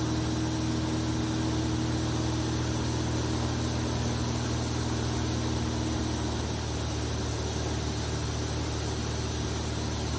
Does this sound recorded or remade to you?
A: recorded